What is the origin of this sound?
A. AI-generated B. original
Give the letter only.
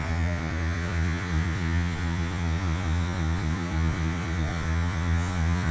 A